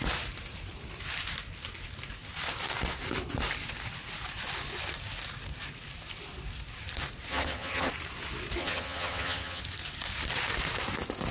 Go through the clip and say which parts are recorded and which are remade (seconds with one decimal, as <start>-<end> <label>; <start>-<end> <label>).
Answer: 0.0-7.3 recorded; 7.3-7.9 remade; 7.9-8.6 recorded; 8.6-9.6 remade; 9.6-11.3 recorded